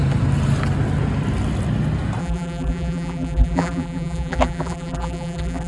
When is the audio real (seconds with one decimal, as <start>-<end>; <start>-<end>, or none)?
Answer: 0.0-2.2